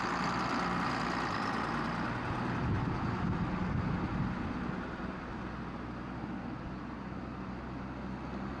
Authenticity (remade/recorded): recorded